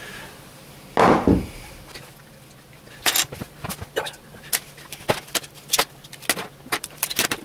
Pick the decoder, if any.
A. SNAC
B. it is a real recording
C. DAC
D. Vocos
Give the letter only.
B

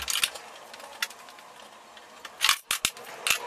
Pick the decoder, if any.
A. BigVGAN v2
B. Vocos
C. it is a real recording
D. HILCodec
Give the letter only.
C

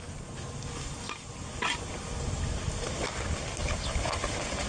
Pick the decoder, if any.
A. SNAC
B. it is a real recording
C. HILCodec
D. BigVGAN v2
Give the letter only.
B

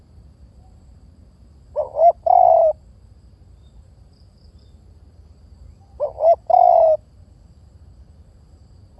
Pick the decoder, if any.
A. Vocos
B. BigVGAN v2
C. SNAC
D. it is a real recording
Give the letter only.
B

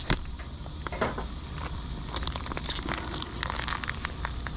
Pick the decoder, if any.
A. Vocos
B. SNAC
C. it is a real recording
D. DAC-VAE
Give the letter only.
C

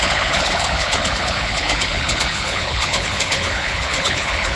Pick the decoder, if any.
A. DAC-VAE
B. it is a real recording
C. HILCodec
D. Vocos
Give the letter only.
C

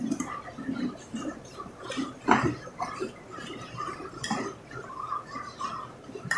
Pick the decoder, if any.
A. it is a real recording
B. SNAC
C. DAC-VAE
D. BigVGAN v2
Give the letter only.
D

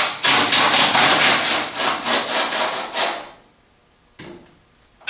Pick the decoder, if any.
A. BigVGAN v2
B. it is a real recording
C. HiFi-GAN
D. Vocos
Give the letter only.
B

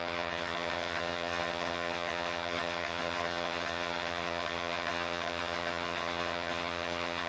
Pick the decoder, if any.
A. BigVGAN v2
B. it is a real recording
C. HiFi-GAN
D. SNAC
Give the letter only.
C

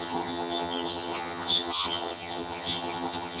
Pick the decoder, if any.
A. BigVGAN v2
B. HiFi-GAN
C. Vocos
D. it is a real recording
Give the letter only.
B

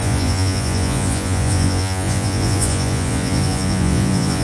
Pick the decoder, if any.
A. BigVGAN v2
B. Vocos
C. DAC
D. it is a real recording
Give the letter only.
B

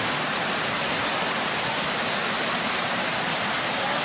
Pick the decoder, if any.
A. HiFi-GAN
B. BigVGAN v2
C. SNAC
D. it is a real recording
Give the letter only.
D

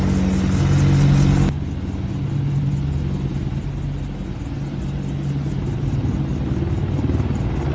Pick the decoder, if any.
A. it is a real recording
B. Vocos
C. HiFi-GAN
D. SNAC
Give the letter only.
A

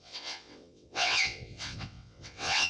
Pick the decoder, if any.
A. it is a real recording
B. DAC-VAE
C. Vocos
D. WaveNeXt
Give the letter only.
D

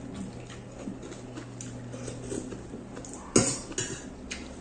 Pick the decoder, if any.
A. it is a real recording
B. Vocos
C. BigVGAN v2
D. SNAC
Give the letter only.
A